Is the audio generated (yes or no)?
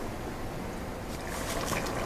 no